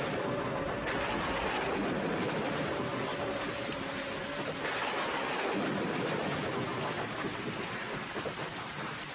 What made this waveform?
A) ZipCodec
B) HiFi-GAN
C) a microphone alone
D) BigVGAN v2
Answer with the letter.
C